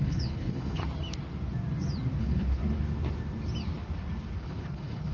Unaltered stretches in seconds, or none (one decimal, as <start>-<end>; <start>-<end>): 0.8-2.2; 2.6-4.4